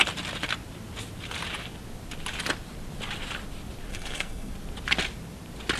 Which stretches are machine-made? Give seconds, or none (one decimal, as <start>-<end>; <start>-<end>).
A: 3.9-4.5